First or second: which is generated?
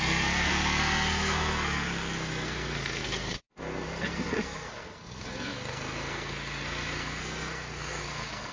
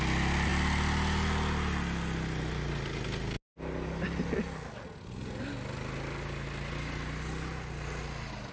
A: first